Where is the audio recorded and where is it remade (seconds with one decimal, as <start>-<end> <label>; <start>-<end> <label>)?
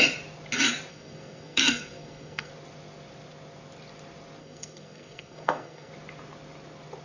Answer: 0.0-0.9 recorded; 0.9-2.5 remade; 2.5-4.4 recorded; 4.4-5.9 remade; 5.9-7.0 recorded